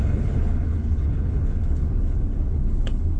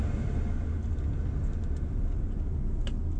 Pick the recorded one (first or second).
second